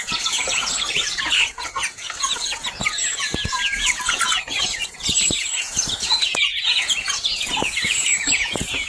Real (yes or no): no